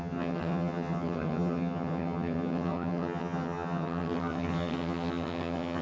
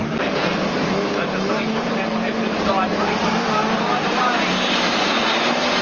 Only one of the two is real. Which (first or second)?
second